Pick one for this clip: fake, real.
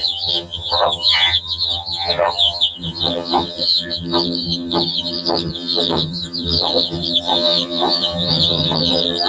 fake